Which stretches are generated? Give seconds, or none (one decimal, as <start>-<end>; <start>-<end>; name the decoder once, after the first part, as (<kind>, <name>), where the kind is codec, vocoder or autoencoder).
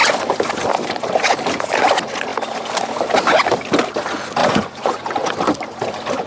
4.4-5.3 (vocoder, Vocos)